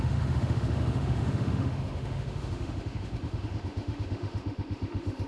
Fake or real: fake